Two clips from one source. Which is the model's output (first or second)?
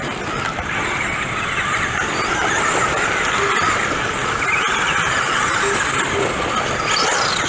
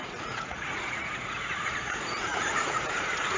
second